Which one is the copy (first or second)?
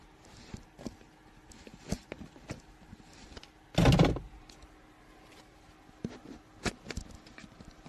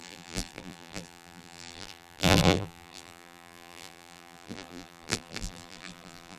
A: second